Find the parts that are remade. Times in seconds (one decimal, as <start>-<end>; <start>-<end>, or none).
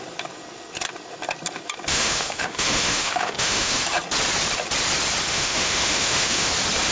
1.9-3.8; 5.3-6.5